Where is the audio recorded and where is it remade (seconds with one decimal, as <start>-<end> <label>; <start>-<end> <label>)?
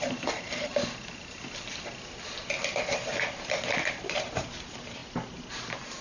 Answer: 0.0-0.7 remade; 0.7-3.9 recorded; 3.9-5.0 remade; 5.0-6.0 recorded